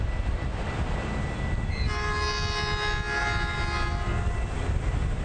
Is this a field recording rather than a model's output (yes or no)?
yes